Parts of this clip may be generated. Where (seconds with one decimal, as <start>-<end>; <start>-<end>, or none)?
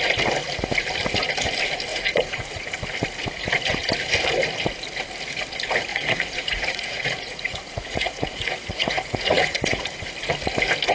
1.9-2.4; 5.9-9.8